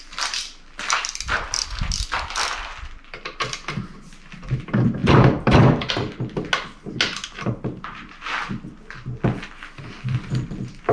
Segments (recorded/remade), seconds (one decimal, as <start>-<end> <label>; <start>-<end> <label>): 0.0-5.0 recorded; 5.0-5.9 remade; 5.9-7.2 recorded; 7.2-8.2 remade; 8.2-10.9 recorded